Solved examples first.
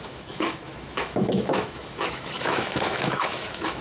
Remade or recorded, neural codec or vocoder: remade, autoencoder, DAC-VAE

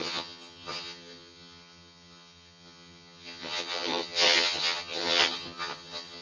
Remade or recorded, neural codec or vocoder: remade, vocoder, HiFi-GAN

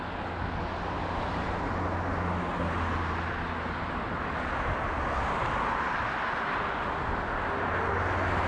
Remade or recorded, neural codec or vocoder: recorded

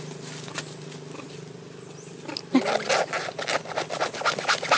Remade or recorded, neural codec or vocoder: recorded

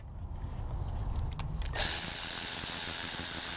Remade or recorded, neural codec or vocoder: recorded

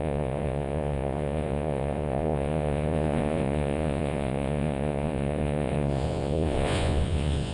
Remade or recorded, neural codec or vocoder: remade, vocoder, Vocos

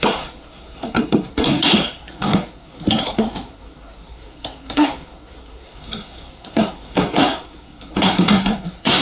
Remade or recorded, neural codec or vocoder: remade, codec, SNAC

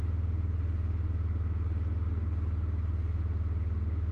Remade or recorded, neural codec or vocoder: recorded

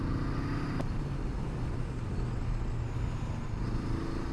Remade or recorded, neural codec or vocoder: recorded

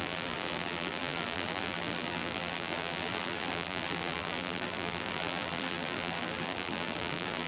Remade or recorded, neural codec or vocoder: remade, vocoder, BigVGAN v2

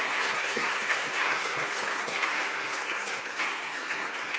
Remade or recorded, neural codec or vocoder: remade, codec, SNAC